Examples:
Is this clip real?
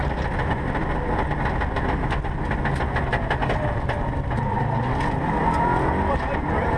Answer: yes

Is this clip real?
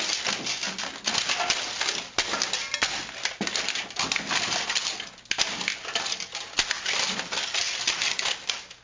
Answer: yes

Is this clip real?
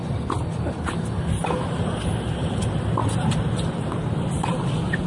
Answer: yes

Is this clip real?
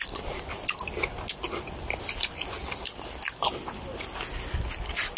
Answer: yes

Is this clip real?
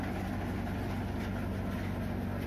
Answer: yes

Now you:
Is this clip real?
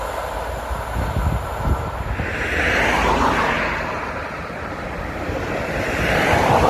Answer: yes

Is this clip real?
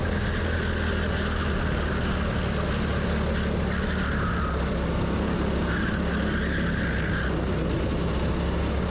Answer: yes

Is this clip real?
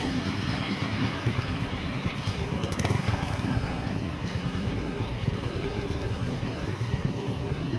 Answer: no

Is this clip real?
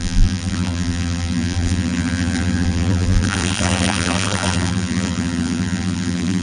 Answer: no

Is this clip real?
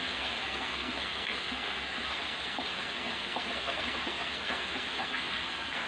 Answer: no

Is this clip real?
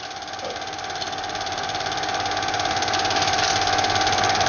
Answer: yes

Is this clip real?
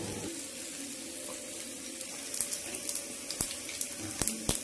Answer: yes